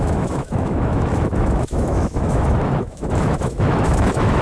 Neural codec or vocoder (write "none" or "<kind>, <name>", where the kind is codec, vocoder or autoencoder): autoencoder, DAC-VAE